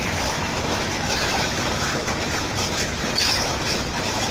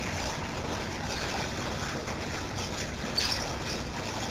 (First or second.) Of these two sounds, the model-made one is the first